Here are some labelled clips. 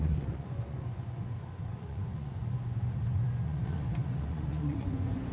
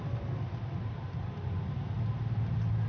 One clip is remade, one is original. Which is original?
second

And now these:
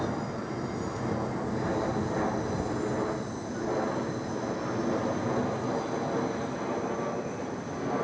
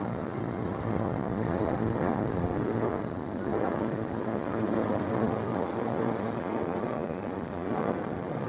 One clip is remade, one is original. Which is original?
first